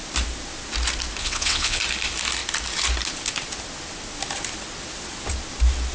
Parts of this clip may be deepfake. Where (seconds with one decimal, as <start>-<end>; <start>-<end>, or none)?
1.2-1.8